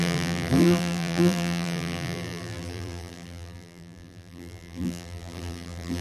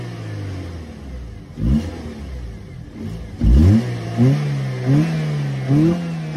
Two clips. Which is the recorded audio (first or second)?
second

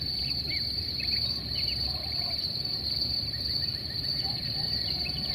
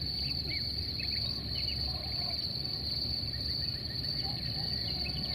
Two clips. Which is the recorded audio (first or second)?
second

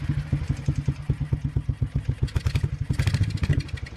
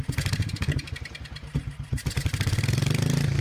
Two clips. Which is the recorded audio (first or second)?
first